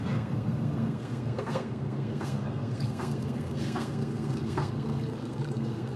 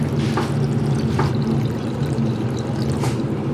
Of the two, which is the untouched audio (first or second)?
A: second